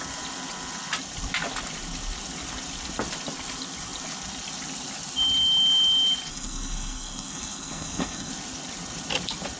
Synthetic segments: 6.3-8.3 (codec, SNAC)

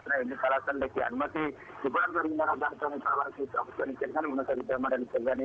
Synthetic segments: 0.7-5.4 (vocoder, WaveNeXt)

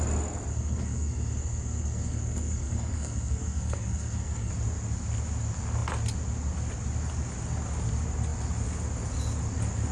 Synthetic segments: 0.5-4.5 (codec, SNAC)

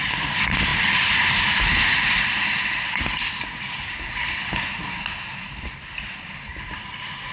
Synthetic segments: none